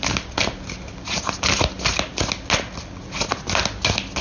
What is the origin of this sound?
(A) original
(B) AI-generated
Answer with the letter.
A